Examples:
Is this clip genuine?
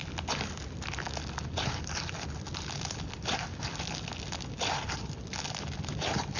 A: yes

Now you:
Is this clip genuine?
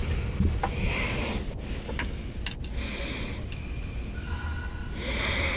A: yes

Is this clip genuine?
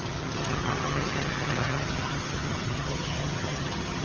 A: no